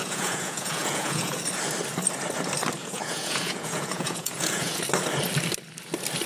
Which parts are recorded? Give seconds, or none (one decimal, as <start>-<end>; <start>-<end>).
1.4-2.8; 4.8-6.3